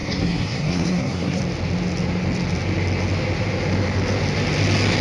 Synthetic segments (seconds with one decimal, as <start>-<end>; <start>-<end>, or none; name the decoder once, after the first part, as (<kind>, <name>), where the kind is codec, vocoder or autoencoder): 0.0-1.4 (codec, SNAC)